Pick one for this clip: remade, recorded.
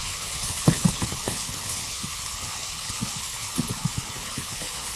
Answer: remade